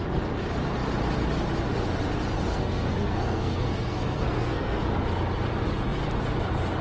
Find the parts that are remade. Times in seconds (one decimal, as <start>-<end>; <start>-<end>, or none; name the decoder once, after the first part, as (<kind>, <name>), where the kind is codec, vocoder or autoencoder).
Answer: 2.5-4.8 (codec, SNAC)